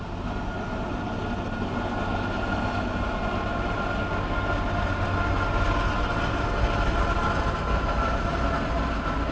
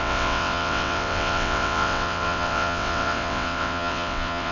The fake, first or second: second